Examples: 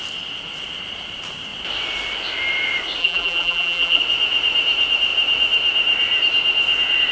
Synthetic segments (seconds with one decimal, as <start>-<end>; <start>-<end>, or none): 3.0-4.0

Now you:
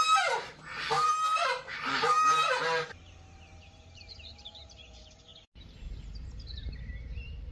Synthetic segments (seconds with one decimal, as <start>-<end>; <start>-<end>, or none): 0.0-7.5

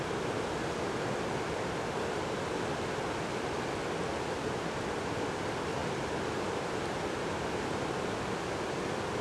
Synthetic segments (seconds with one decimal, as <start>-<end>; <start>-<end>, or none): 5.8-9.2

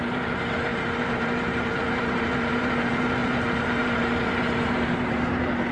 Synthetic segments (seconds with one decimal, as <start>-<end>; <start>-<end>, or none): 0.0-5.7

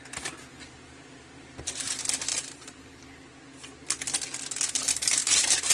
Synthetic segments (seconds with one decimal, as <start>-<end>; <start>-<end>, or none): 0.5-1.6; 2.3-3.0; 4.8-5.7

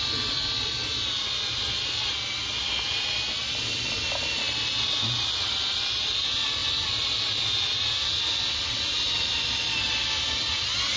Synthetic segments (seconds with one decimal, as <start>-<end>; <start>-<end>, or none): none

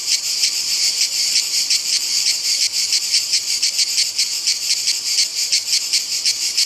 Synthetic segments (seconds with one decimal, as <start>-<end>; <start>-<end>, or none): 0.0-3.7